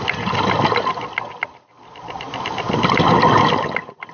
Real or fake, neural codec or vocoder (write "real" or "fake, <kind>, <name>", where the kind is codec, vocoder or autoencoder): real